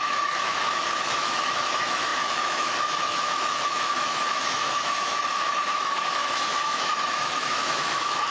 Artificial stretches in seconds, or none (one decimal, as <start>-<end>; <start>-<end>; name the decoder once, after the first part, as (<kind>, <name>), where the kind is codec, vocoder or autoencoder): 0.0-8.3 (autoencoder, DAC-VAE)